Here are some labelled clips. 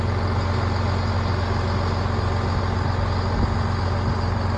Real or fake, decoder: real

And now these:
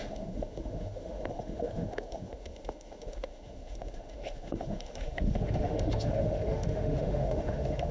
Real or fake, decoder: fake, autoencoder, DAC-VAE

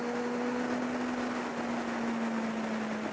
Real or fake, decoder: real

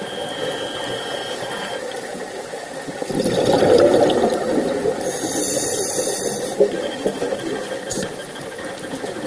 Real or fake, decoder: real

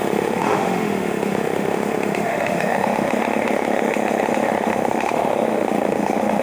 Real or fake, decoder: fake, autoencoder, DAC-VAE